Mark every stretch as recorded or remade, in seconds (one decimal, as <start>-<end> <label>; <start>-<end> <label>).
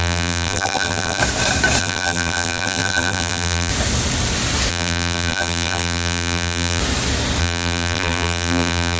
0.0-1.2 remade; 1.2-1.8 recorded; 1.8-3.7 remade; 3.7-4.7 recorded; 4.7-6.8 remade; 6.8-7.4 recorded; 7.4-9.0 remade